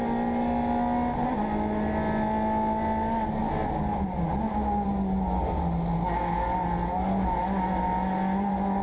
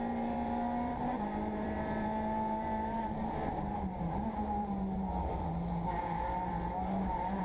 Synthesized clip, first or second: second